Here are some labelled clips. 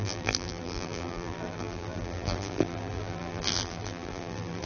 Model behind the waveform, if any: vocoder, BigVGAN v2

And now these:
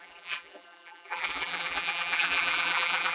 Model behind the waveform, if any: vocoder, BigVGAN v2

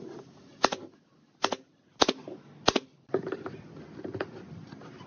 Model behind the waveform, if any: none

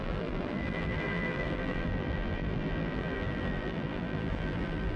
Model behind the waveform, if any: vocoder, BigVGAN v2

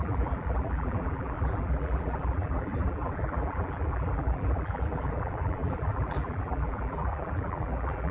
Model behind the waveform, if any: vocoder, BigVGAN v2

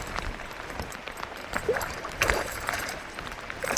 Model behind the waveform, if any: vocoder, BigVGAN v2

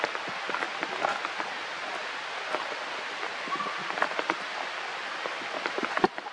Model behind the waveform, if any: none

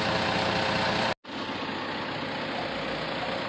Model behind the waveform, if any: none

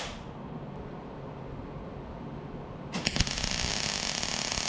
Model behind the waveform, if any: none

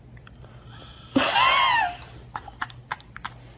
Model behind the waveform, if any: none